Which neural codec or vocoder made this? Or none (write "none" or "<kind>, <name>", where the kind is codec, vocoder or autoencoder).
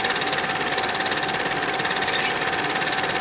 none